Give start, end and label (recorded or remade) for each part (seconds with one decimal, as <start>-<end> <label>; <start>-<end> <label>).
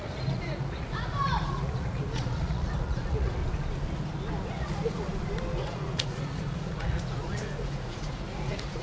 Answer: 0.0-3.4 remade; 3.4-4.5 recorded; 4.5-5.1 remade; 5.1-5.6 recorded; 5.6-8.8 remade